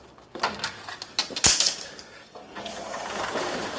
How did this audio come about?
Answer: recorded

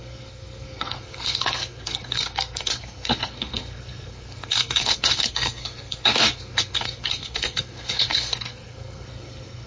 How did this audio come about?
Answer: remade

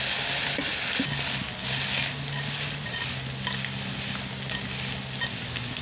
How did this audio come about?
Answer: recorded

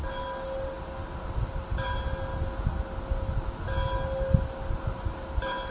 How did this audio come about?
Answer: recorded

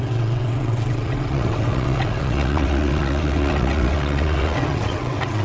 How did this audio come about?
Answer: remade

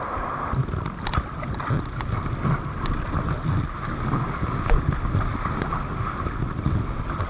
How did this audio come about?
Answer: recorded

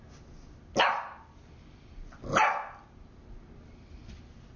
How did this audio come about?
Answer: recorded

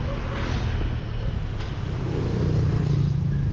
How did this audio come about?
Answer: recorded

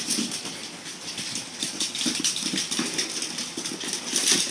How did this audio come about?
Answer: recorded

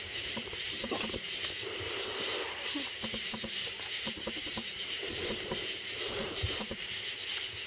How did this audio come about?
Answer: remade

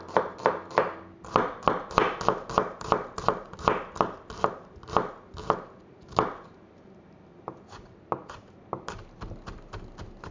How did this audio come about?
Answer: recorded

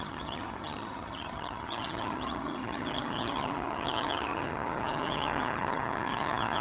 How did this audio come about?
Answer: remade